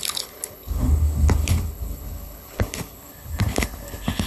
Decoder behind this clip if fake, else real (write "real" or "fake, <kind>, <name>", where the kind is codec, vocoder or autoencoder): fake, codec, HILCodec